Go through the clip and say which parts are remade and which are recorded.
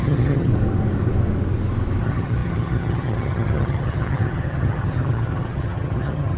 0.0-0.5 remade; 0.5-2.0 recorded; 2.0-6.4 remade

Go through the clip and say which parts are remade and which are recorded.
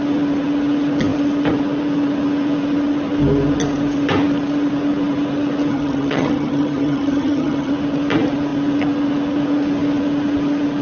0.0-5.7 recorded; 5.7-7.7 remade; 7.7-10.8 recorded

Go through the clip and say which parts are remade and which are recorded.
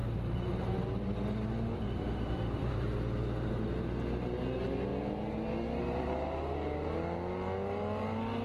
0.0-8.4 recorded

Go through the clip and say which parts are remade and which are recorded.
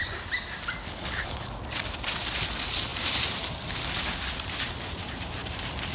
0.0-0.8 recorded; 0.8-1.5 remade; 1.5-5.9 recorded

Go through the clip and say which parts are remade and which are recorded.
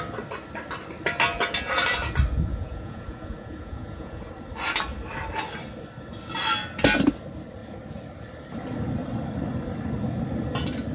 0.0-2.5 recorded; 2.5-4.3 remade; 4.3-10.9 recorded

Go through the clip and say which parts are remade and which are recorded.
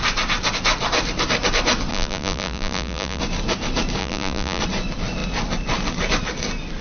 0.0-1.9 recorded; 1.9-3.2 remade; 3.2-4.0 recorded; 4.0-4.6 remade; 4.6-6.8 recorded